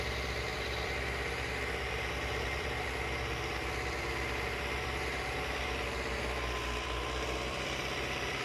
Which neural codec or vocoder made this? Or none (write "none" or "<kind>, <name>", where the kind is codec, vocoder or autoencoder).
vocoder, BigVGAN v2